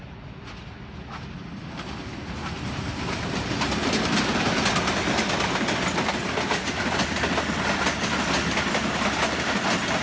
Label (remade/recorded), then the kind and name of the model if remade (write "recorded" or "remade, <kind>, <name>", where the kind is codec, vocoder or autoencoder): recorded